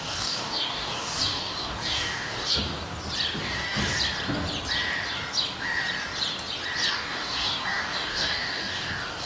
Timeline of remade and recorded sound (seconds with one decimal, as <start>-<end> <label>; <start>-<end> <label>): 0.0-2.6 remade; 2.6-3.4 recorded; 3.4-3.8 remade; 3.8-6.9 recorded; 6.9-9.3 remade